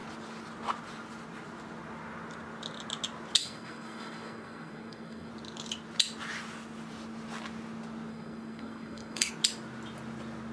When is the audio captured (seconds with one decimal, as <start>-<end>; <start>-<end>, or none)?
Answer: 0.0-3.4; 5.3-8.1; 9.3-10.5